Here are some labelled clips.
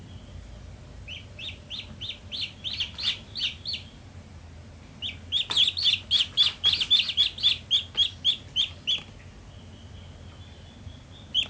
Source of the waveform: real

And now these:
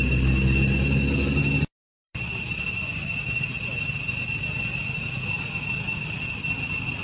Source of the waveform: real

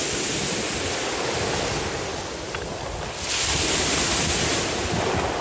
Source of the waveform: real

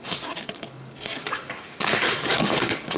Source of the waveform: fake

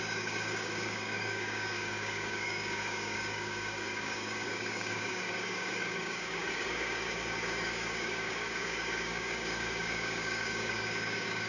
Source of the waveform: fake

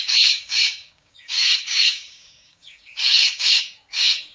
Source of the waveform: fake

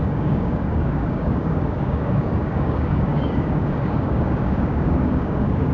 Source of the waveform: fake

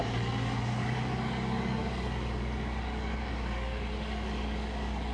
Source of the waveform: fake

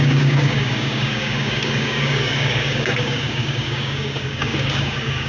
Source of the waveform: fake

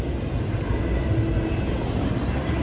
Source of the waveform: real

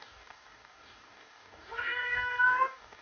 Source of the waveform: fake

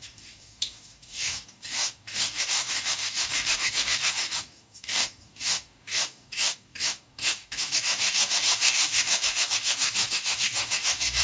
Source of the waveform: fake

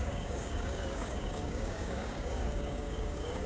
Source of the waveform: fake